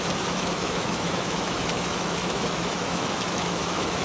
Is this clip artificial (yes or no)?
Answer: yes